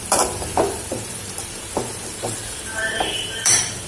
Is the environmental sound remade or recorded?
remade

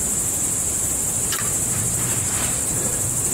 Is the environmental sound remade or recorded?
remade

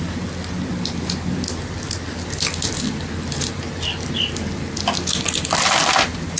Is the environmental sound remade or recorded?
recorded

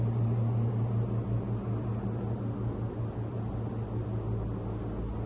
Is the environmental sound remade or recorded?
recorded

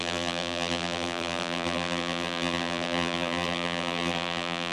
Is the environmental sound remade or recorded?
remade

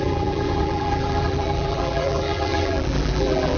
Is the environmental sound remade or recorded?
remade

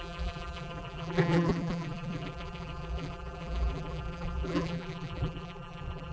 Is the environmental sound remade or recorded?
remade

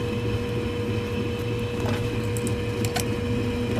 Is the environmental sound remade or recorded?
recorded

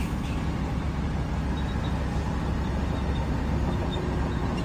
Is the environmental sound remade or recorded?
recorded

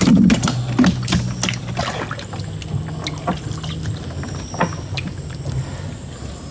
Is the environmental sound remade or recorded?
recorded